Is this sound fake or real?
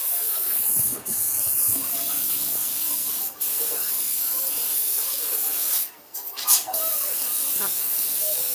fake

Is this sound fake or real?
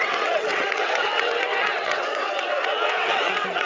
fake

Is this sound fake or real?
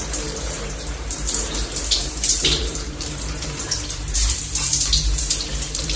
fake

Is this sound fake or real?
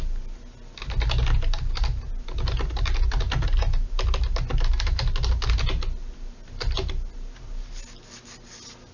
real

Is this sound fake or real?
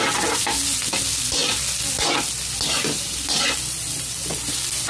real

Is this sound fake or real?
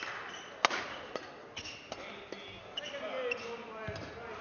real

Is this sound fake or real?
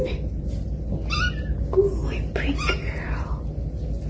real